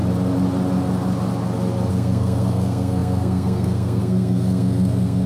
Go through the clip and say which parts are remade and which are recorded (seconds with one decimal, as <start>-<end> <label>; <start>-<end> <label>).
0.0-1.9 recorded; 1.9-5.3 remade